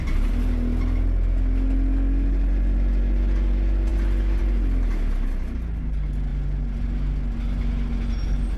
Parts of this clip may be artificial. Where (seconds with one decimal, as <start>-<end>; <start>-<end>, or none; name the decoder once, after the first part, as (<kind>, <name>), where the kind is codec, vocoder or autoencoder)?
none